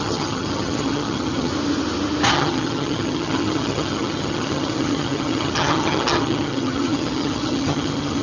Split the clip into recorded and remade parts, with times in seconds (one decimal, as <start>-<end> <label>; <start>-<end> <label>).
0.0-1.5 remade; 1.5-2.3 recorded; 2.3-8.2 remade